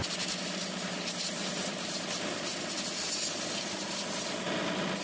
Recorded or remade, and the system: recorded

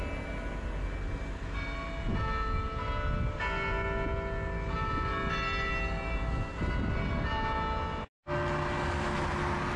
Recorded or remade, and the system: recorded